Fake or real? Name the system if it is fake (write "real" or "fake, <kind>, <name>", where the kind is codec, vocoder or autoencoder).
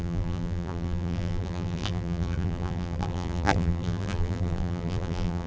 fake, vocoder, BigVGAN v2